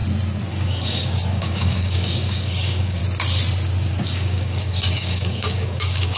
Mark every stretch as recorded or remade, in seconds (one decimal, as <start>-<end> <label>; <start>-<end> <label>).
0.0-0.5 recorded; 0.5-3.0 remade; 3.0-4.0 recorded; 4.0-6.2 remade